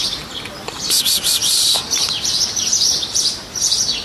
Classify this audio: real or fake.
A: fake